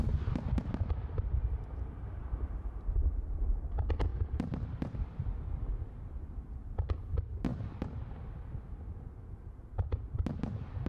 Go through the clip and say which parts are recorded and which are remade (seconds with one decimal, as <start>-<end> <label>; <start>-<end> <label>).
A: 0.0-2.2 recorded; 2.2-3.4 remade; 3.4-4.1 recorded; 4.1-5.3 remade; 5.3-7.5 recorded; 7.5-8.8 remade; 8.8-10.9 recorded